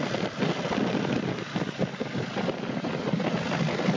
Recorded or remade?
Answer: recorded